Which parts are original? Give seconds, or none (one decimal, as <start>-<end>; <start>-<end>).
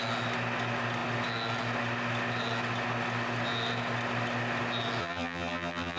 0.0-5.0